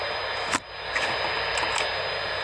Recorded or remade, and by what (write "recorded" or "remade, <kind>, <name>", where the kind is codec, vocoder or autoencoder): recorded